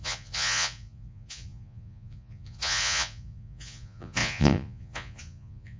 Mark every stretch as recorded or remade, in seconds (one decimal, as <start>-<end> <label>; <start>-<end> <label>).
0.0-5.8 remade